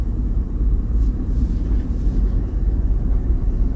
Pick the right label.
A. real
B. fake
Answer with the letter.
B